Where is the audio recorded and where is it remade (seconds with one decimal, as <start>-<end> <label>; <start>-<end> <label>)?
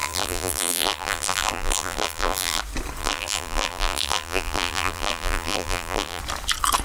0.0-2.6 remade; 2.6-3.0 recorded; 3.0-6.2 remade; 6.2-6.8 recorded